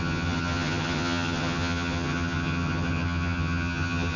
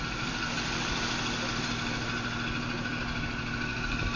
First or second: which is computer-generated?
first